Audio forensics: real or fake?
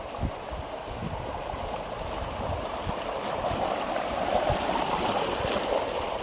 real